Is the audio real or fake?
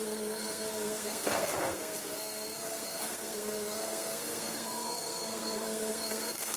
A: fake